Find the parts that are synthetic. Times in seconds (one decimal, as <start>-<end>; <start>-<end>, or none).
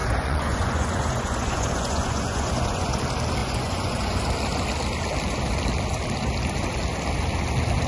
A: 0.0-3.0; 3.4-4.2